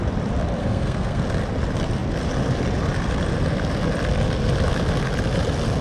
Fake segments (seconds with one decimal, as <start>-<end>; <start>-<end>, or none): 0.6-1.2